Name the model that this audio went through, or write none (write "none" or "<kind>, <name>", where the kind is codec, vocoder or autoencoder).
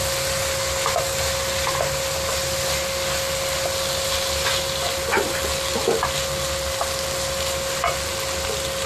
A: none